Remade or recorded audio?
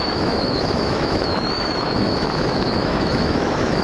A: remade